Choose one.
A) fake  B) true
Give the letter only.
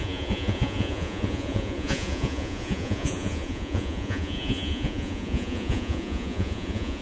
A